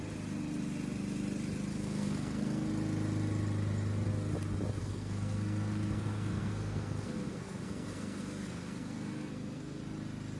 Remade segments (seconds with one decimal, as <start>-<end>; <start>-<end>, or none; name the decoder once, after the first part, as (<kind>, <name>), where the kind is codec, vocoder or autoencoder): 1.7-2.7 (codec, SNAC); 4.8-9.8